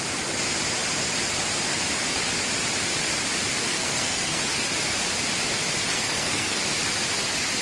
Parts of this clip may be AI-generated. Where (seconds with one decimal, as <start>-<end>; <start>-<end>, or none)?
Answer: 3.7-4.4; 5.9-6.6